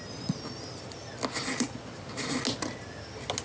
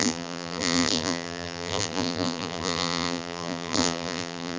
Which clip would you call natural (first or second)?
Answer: first